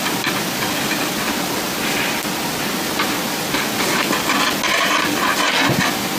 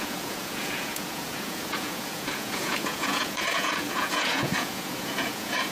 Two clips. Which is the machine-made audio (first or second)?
second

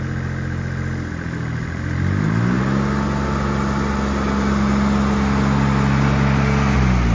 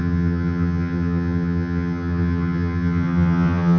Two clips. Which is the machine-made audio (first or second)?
second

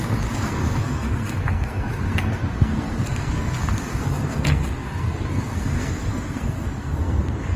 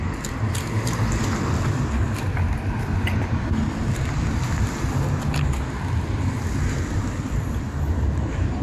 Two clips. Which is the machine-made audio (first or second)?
first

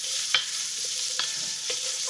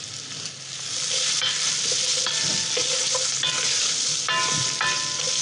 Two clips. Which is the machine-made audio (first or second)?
first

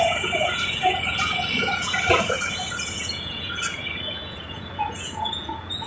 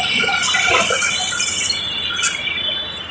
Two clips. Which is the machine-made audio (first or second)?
first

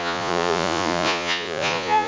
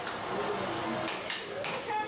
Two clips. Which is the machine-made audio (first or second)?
first